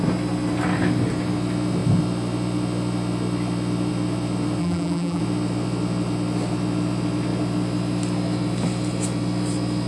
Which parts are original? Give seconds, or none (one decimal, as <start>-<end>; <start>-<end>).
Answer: 0.0-4.6; 5.2-9.9